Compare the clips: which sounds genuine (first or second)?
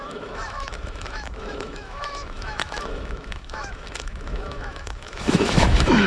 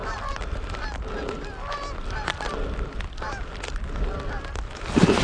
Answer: second